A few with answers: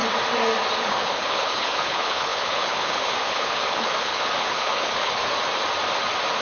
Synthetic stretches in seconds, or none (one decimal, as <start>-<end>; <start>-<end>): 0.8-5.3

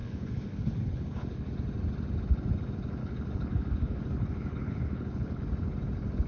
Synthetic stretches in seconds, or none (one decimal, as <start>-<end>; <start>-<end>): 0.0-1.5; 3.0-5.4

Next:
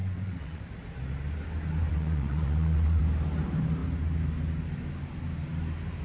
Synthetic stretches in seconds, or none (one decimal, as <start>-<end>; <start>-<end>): 0.0-0.6; 1.9-3.0

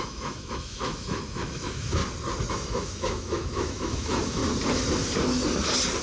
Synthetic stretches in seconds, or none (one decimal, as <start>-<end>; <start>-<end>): 0.0-2.0; 2.5-4.4

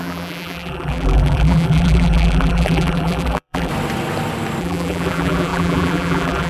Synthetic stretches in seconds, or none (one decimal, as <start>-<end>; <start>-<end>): 0.0-3.7; 4.6-6.5